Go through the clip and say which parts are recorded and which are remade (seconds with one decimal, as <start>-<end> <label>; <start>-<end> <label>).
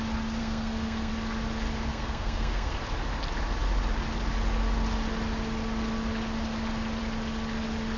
0.0-0.4 recorded; 0.4-1.1 remade; 1.1-1.9 recorded; 1.9-2.7 remade; 2.7-8.0 recorded